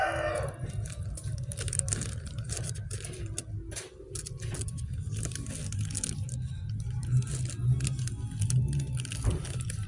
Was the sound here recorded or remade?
recorded